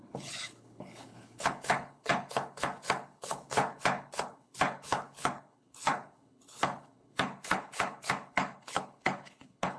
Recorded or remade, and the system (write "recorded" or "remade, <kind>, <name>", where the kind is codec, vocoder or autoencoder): remade, codec, HILCodec